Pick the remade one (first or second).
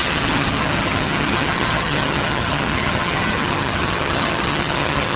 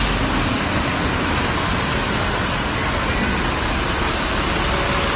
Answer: first